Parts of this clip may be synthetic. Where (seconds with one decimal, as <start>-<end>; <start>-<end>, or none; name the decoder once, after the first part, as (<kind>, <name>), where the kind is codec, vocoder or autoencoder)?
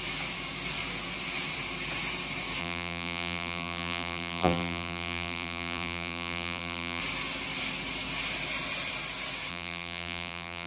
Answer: 2.6-7.0 (vocoder, BigVGAN v2); 9.5-10.7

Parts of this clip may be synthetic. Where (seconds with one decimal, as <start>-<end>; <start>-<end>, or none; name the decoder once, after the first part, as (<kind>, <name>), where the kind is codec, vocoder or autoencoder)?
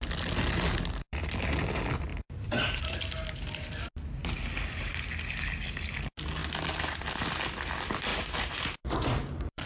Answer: 2.1-3.0 (vocoder, BigVGAN v2); 4.2-4.9; 6.4-7.0; 8.1-9.7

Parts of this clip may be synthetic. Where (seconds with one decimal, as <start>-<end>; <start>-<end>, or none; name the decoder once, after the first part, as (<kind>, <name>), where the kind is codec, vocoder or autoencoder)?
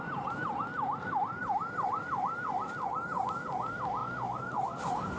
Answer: 1.4-2.0 (vocoder, BigVGAN v2); 4.0-4.8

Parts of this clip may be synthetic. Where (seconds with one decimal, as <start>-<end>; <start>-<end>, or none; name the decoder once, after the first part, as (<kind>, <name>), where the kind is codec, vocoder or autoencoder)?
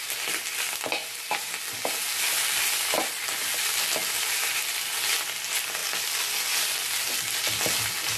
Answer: 1.0-1.6 (vocoder, BigVGAN v2)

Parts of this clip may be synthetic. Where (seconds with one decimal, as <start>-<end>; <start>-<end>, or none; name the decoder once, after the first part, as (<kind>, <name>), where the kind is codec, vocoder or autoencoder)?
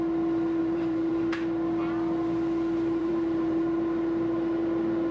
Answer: 0.6-1.1 (vocoder, BigVGAN v2); 3.0-3.6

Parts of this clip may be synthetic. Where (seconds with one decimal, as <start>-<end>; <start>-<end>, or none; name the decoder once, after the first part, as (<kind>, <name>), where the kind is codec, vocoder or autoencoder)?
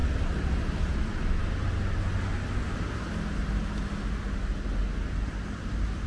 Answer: 0.0-2.3 (vocoder, BigVGAN v2); 5.3-6.1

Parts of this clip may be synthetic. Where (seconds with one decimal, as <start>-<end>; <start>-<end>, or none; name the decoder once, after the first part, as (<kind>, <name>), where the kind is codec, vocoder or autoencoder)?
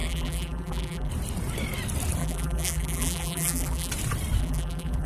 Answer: 0.0-1.1 (vocoder, BigVGAN v2); 2.2-3.9; 4.4-5.1